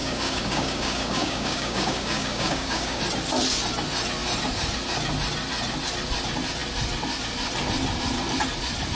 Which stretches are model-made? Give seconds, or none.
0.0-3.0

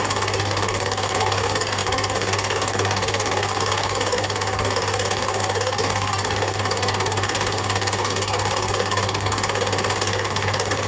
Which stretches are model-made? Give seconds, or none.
0.0-10.9

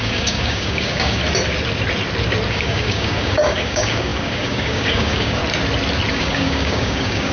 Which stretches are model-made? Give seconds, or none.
0.0-1.2; 2.5-5.4; 6.1-7.3